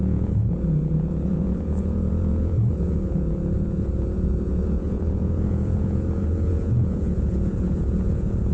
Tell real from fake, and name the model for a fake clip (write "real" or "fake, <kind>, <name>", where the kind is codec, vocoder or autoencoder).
fake, vocoder, Vocos